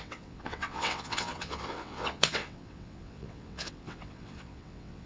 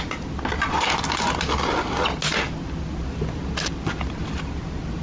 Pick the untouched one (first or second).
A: second